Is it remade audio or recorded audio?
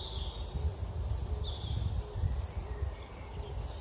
recorded